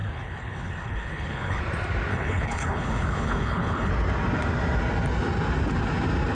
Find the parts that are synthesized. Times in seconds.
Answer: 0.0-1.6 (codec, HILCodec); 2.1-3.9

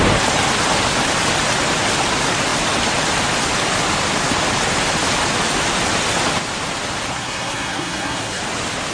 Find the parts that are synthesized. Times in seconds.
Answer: 7.1-8.4 (codec, SNAC)

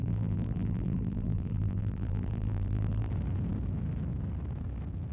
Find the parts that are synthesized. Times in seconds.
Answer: 0.0-3.1 (vocoder, BigVGAN v2)

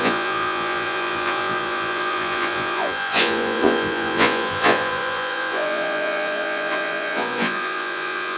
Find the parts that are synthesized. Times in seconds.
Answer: 0.0-8.4 (vocoder, Vocos)

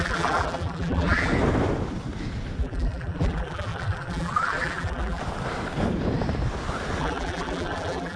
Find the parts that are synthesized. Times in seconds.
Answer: 0.0-1.3 (vocoder, BigVGAN v2); 2.6-5.2; 7.0-8.2

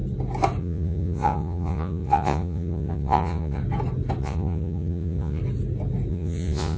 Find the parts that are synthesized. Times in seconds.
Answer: 0.6-3.6 (vocoder, Vocos); 4.2-5.4; 6.1-6.8